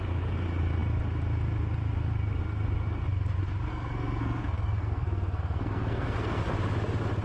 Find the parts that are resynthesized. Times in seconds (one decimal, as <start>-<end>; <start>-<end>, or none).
3.7-6.4